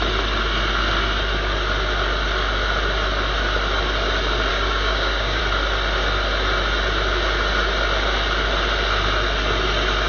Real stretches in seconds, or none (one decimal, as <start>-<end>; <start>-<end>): 0.0-4.5; 5.4-10.1